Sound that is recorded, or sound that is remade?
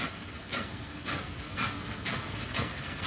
remade